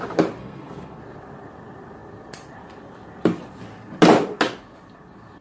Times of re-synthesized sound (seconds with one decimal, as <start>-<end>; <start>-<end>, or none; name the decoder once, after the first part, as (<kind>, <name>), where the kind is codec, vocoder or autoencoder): 0.4-1.0 (codec, SNAC)